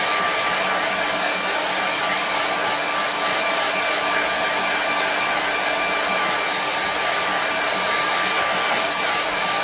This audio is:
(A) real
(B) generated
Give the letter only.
A